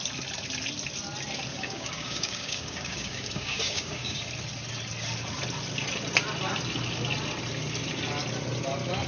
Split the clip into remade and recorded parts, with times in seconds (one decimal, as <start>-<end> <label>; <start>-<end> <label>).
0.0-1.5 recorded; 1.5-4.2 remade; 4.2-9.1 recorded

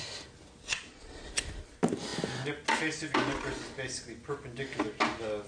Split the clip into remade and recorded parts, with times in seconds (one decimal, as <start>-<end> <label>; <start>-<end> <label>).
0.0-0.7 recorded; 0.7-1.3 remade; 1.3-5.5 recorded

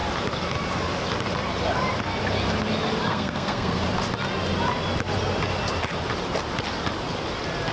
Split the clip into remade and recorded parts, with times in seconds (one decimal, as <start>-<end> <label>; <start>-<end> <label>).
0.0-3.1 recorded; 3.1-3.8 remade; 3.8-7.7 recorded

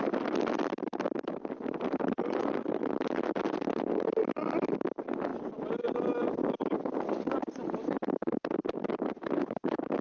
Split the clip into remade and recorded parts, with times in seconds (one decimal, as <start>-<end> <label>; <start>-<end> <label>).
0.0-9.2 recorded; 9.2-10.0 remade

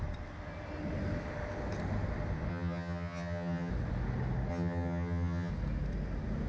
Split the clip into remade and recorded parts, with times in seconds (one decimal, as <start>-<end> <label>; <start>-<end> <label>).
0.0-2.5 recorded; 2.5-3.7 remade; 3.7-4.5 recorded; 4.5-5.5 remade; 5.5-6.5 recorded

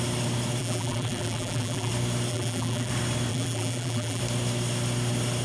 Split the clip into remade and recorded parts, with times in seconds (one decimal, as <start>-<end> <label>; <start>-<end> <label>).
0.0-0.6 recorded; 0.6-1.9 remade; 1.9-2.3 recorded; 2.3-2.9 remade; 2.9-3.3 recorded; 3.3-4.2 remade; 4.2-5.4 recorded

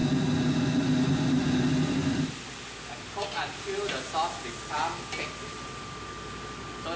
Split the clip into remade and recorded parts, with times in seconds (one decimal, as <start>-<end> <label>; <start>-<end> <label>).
0.0-7.0 recorded